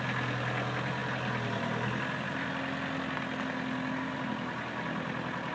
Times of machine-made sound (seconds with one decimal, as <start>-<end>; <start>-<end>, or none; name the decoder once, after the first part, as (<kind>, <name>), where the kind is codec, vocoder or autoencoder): none